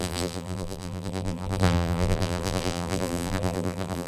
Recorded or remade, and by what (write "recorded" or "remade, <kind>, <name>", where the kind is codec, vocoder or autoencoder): remade, vocoder, BigVGAN v2